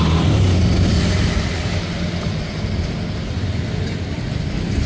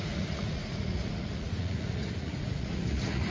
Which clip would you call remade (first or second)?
second